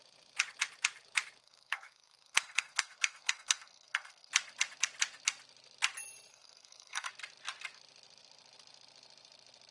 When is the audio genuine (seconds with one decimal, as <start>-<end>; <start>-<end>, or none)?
0.0-1.4; 4.3-6.3; 7.1-9.7